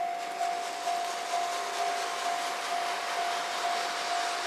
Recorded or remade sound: recorded